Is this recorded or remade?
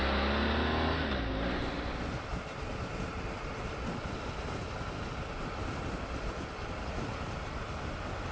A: recorded